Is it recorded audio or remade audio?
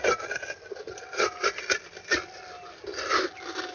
recorded